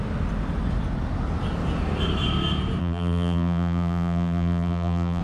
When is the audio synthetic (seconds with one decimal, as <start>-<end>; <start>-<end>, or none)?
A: 2.8-5.2